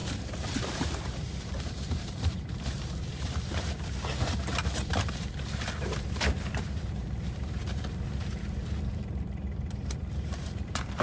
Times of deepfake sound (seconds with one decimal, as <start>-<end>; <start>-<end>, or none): 0.0-11.0